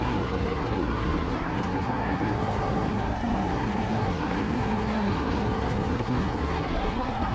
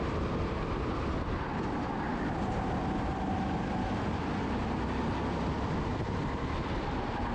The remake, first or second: first